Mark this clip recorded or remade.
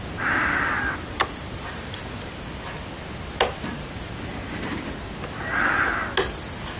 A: recorded